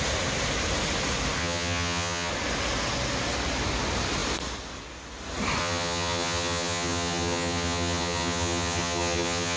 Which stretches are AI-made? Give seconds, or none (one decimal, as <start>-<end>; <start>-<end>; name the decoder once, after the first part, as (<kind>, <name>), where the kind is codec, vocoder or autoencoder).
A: 1.4-2.3 (vocoder, HiFi-GAN); 5.6-9.6